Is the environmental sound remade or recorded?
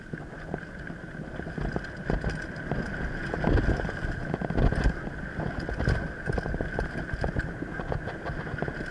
recorded